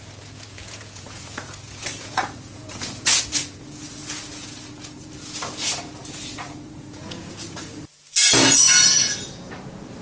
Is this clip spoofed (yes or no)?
yes